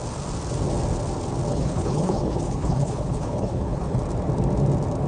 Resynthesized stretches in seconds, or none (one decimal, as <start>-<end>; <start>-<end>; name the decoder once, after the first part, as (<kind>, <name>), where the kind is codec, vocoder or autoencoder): 1.5-4.0 (codec, HILCodec)